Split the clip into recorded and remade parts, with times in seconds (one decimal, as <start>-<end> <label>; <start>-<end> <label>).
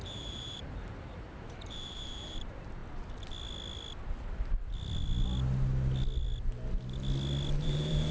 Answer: 0.0-2.8 remade; 2.8-7.6 recorded; 7.6-8.1 remade